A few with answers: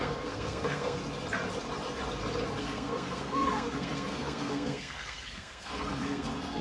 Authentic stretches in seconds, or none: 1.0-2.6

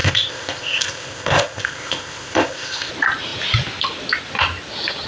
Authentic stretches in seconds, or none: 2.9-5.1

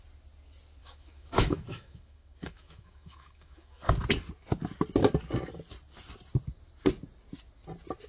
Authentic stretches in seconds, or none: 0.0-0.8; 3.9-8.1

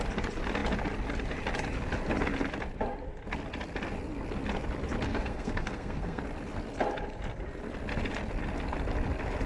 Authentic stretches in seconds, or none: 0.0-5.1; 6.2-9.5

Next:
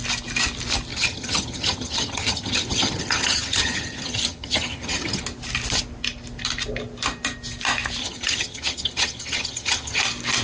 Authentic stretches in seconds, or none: 0.0-0.9; 5.2-8.0; 10.0-10.4